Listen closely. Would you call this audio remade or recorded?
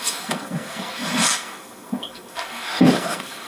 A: remade